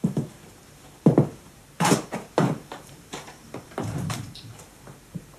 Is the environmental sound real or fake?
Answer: fake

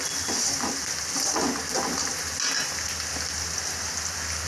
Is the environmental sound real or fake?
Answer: real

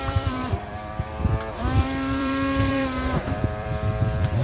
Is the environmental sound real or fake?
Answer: fake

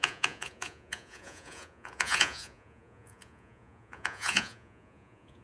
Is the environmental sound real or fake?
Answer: fake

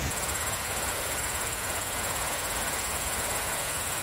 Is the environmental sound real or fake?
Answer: fake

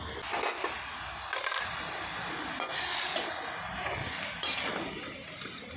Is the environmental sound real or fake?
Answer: real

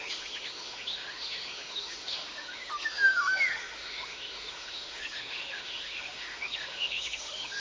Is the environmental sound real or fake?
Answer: fake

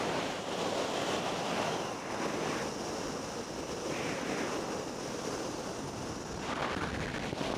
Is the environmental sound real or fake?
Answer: real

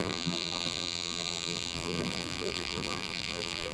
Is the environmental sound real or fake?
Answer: fake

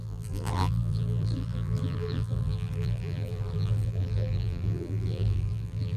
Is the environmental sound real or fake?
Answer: fake